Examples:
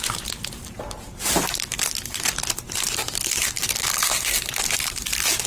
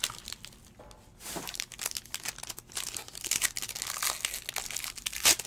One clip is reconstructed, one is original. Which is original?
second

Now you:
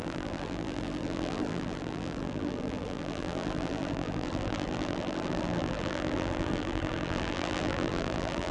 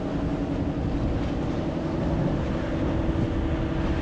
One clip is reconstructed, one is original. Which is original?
second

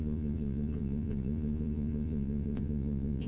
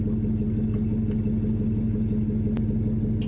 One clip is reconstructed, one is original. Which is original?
second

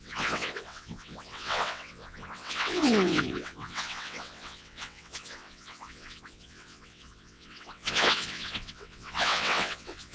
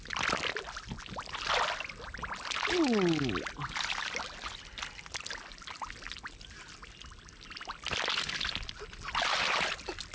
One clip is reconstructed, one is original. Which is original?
second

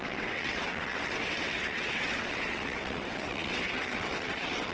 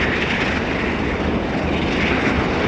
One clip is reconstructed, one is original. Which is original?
second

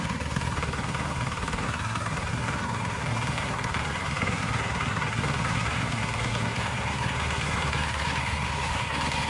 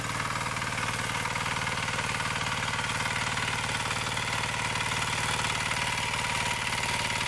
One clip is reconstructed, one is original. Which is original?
second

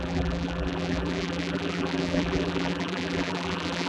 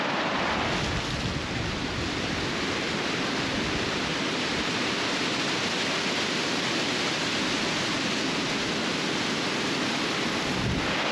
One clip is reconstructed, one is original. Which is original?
second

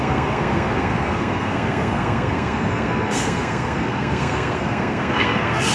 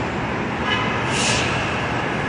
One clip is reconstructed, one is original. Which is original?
second